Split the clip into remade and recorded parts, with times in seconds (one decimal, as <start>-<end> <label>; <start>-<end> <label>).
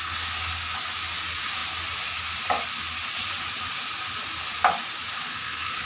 0.0-5.3 recorded; 5.3-5.9 remade